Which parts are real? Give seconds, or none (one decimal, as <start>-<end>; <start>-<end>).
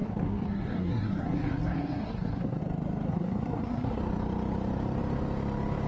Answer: 2.6-3.1; 4.0-5.9